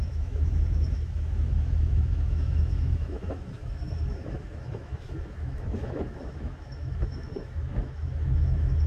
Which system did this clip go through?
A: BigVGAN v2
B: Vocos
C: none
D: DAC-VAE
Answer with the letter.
D